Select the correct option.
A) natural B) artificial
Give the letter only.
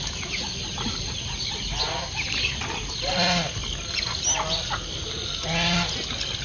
A